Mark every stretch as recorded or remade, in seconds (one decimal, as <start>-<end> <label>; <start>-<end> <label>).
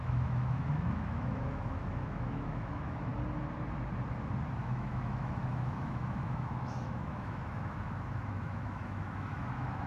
0.0-3.1 remade; 3.1-4.6 recorded; 4.6-9.9 remade